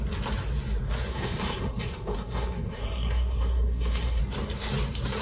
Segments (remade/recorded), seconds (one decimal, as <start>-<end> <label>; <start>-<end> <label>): 0.0-1.1 recorded; 1.1-4.2 remade; 4.2-5.2 recorded